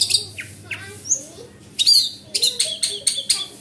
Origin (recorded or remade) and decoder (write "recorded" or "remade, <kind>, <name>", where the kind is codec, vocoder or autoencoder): recorded